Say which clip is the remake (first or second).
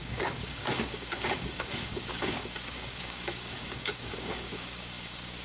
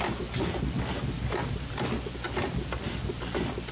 first